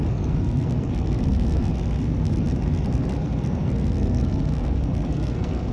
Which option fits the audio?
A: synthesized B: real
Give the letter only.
A